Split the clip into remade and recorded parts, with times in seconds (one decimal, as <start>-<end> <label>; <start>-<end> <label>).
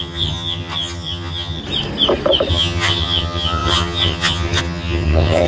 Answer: 0.0-1.6 remade; 1.6-2.5 recorded; 2.5-5.5 remade